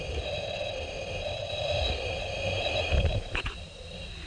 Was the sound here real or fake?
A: real